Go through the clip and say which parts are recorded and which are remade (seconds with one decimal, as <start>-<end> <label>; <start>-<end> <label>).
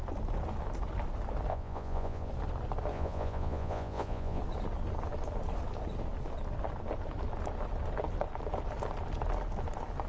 0.0-1.5 recorded; 1.5-2.3 remade; 2.3-2.9 recorded; 2.9-4.4 remade; 4.4-10.1 recorded